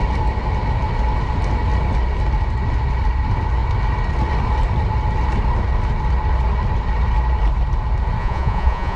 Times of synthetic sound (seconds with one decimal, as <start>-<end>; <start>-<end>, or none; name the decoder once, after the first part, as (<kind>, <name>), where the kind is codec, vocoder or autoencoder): 8.2-9.0 (vocoder, Vocos)